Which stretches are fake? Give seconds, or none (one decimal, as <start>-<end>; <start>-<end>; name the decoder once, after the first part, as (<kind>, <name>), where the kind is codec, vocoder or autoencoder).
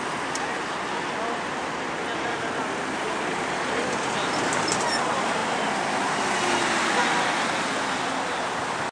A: none